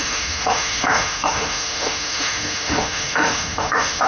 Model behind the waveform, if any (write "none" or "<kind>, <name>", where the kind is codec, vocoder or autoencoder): autoencoder, DAC-VAE